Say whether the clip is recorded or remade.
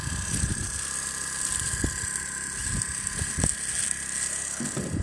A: recorded